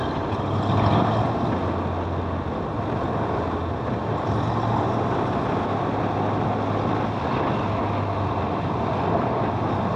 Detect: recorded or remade recorded